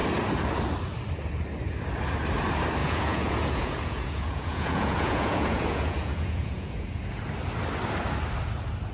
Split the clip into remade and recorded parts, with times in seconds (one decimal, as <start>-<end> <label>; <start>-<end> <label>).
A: 0.0-2.8 recorded; 2.8-7.1 remade; 7.1-8.9 recorded

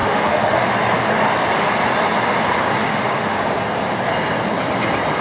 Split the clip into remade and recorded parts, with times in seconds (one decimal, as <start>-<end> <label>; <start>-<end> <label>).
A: 0.0-0.7 remade; 0.7-2.8 recorded; 2.8-3.4 remade; 3.4-5.2 recorded

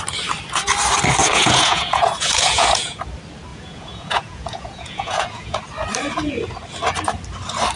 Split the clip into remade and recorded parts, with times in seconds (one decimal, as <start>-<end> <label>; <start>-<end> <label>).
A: 0.0-1.2 recorded; 1.2-3.0 remade; 3.0-3.5 recorded; 3.5-5.6 remade; 5.6-7.8 recorded

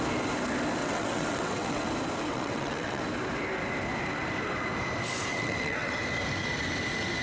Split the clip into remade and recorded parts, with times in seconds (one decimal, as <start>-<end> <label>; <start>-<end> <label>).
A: 0.0-0.8 recorded; 0.8-1.9 remade; 1.9-2.3 recorded; 2.3-3.0 remade; 3.0-5.3 recorded; 5.3-5.9 remade; 5.9-7.2 recorded

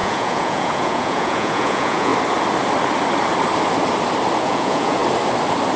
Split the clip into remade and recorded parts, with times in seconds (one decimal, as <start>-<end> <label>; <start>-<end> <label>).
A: 0.0-2.1 remade; 2.1-4.4 recorded; 4.4-5.0 remade; 5.0-5.8 recorded